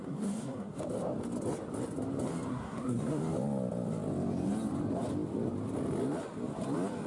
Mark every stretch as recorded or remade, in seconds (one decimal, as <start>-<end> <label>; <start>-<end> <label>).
0.0-0.8 remade; 0.8-2.5 recorded; 2.5-3.2 remade; 3.2-7.1 recorded